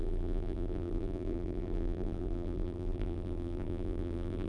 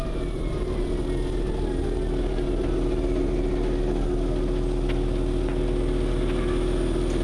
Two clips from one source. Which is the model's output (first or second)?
first